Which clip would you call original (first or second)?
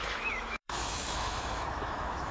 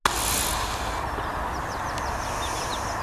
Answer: second